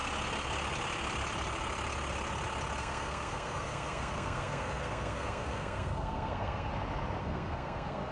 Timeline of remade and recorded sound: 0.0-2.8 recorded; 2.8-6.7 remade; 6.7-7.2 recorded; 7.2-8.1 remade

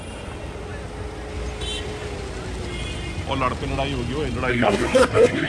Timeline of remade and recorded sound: 0.0-4.5 recorded; 4.5-5.5 remade

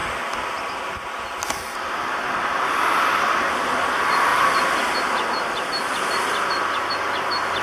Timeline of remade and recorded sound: 0.0-7.6 recorded